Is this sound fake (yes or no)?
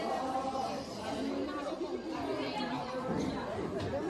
no